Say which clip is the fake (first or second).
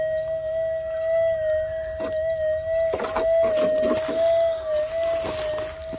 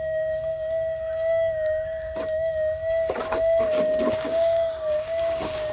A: second